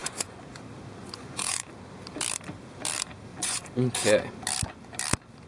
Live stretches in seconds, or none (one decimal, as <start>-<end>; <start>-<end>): 0.6-1.0; 1.7-3.3; 4.3-5.5